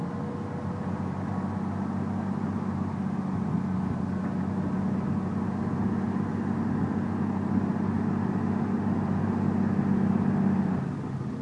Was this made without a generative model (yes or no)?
yes